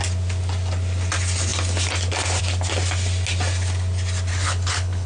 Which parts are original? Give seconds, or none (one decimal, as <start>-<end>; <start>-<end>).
0.0-4.3